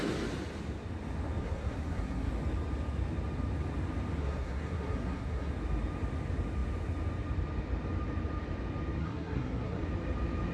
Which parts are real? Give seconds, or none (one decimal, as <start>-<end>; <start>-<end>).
0.0-1.4; 2.3-4.2; 5.5-9.0; 9.8-10.5